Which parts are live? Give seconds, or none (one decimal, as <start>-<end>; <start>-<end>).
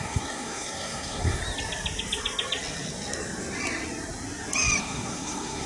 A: 1.4-4.8